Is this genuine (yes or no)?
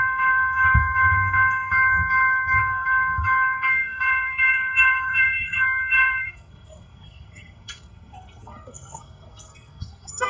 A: no